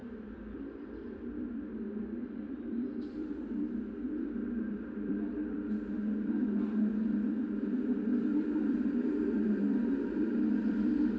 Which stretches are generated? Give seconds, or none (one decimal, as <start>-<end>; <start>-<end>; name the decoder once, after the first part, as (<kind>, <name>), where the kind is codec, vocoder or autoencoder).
0.0-11.2 (vocoder, BigVGAN v2)